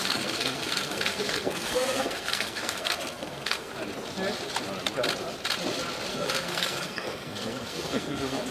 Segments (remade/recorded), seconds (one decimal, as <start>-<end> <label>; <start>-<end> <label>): 0.0-3.7 remade; 3.7-6.1 recorded; 6.1-8.5 remade